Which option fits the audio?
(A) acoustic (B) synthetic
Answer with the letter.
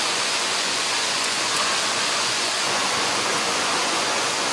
B